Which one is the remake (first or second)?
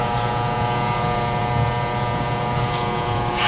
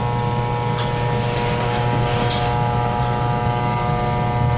first